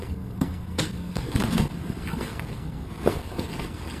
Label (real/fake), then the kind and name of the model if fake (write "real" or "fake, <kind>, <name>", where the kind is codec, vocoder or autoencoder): fake, codec, SNAC